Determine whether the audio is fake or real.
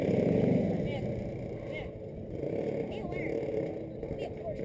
real